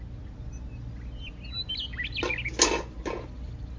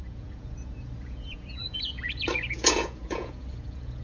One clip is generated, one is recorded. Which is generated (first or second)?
second